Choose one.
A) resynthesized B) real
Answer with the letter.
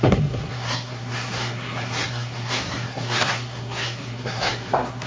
A